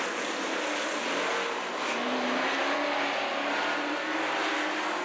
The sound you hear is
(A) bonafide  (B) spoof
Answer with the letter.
A